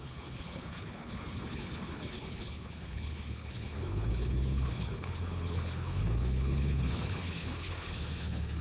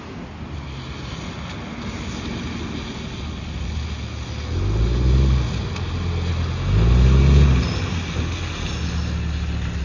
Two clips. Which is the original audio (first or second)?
second